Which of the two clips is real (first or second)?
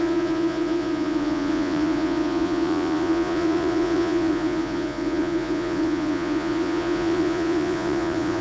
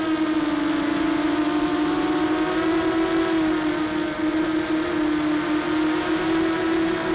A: second